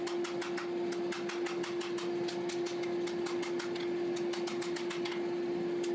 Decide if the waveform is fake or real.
real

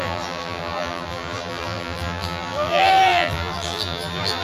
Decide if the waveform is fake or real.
fake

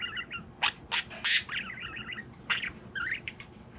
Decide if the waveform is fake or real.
real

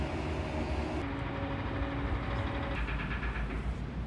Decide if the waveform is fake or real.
real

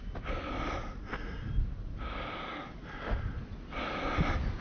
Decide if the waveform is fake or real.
real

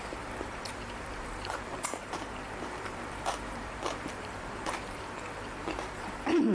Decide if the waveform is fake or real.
fake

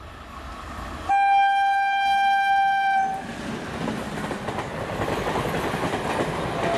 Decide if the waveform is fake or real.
real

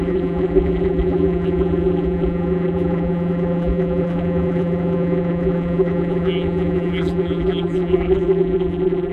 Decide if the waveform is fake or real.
fake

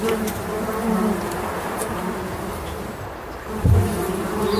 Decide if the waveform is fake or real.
fake